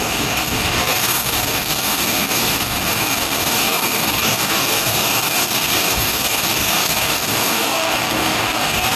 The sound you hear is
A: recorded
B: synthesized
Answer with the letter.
B